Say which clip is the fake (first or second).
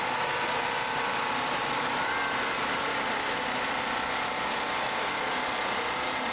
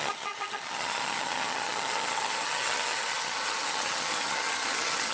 second